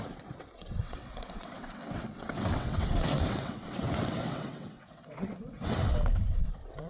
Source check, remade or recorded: remade